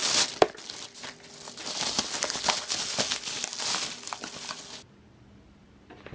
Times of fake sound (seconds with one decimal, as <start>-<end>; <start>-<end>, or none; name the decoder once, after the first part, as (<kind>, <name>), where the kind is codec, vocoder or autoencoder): none